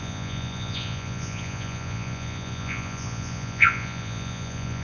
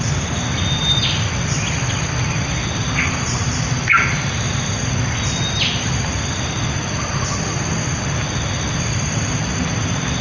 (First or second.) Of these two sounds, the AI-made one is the first